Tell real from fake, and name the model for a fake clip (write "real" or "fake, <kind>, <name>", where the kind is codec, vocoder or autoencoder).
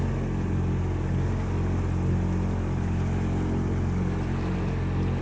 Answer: real